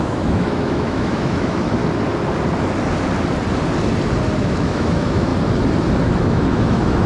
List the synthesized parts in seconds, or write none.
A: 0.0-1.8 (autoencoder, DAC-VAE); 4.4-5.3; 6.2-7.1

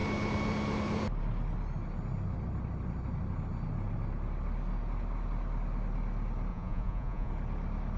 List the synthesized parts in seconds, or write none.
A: 6.5-7.3 (vocoder, Vocos)

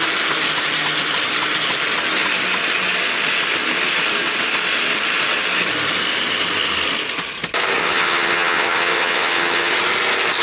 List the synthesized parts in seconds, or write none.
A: 7.8-9.7 (vocoder, HiFi-GAN)

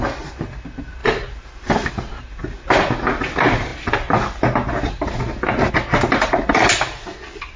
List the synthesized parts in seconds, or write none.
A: 1.0-1.9 (vocoder, BigVGAN v2)

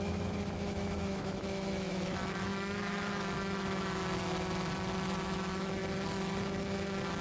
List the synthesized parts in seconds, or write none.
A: 0.0-4.0 (autoencoder, DAC-VAE); 5.2-5.8

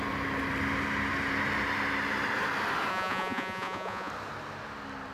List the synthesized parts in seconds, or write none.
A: 2.9-4.1 (vocoder, Vocos)

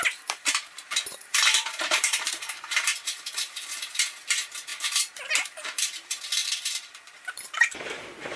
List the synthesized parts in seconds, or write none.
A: 0.0-8.4 (vocoder, BigVGAN v2)